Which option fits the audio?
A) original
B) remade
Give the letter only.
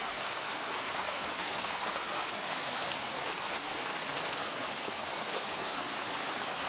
B